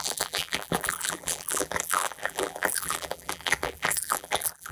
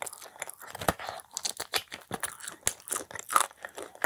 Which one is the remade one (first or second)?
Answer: first